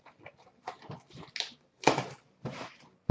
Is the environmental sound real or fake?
real